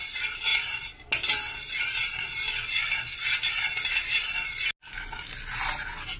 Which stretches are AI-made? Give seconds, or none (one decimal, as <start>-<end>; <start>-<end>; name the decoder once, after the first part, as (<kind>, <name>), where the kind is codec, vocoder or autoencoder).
none